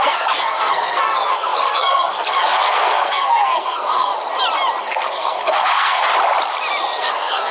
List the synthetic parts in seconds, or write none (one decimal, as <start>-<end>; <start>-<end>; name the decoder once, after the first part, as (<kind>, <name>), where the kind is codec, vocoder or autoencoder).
0.0-4.1 (codec, SNAC); 4.8-6.1; 7.0-7.5